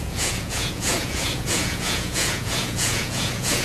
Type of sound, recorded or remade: remade